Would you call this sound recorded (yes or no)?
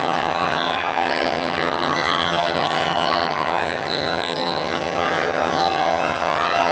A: no